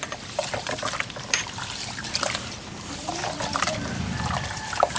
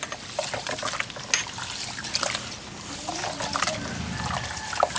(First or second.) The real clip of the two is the second